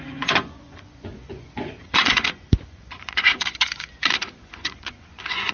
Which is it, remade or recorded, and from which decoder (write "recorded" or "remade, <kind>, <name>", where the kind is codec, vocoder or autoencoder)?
remade, vocoder, Vocos